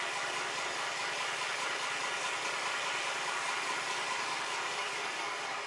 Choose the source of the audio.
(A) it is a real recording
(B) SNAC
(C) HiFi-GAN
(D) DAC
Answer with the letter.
D